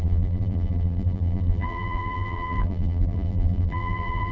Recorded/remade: remade